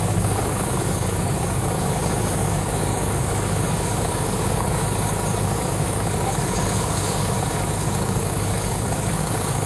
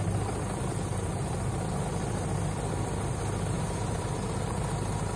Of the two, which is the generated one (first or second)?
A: first